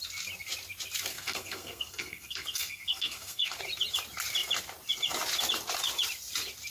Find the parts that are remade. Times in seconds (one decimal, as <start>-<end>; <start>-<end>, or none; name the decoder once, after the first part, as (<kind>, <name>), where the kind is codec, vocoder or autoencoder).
1.1-3.6 (codec, SNAC)